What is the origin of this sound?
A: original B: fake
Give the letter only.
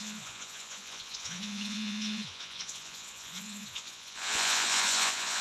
B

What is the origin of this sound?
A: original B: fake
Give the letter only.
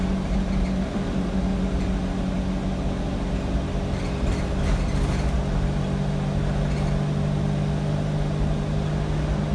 A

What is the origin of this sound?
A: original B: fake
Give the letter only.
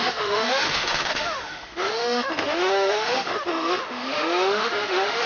B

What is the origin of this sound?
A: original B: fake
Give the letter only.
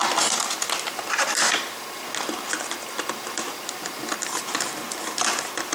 A